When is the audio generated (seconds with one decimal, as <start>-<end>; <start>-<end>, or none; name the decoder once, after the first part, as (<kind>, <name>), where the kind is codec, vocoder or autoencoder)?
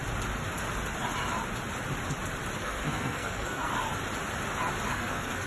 2.6-3.9 (codec, SNAC); 4.9-5.5